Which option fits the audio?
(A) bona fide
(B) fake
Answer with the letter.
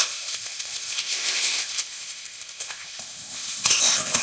B